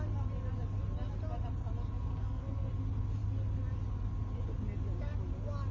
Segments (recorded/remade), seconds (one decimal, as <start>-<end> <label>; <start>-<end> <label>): 0.0-2.1 recorded; 2.1-2.7 remade; 2.7-5.7 recorded